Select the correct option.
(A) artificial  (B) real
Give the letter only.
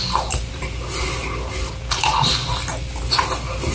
B